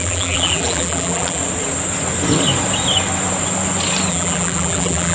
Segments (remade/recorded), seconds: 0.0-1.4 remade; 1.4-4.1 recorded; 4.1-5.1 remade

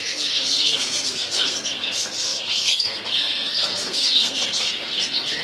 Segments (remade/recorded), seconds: 0.0-5.4 remade

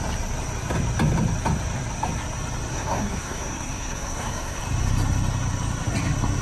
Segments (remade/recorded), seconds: 0.0-2.7 recorded; 2.7-4.6 remade; 4.6-6.4 recorded